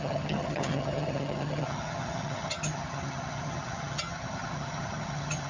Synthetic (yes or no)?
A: yes